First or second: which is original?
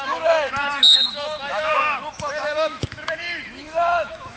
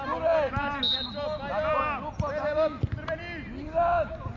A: second